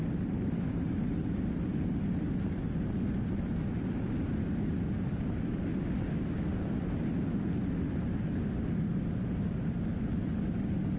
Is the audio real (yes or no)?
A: yes